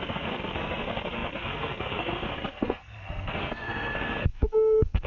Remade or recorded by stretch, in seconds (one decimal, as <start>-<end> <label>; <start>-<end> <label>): 0.0-5.1 remade